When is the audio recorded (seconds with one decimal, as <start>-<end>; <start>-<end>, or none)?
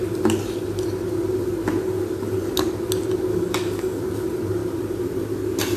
0.0-3.3; 4.0-5.8